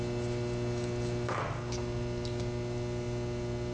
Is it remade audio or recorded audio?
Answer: recorded